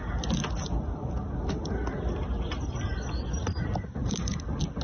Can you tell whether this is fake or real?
real